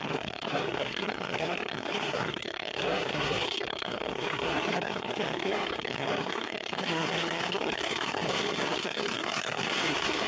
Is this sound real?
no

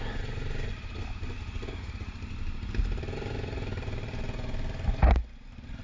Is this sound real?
yes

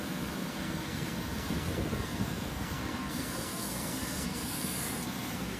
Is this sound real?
no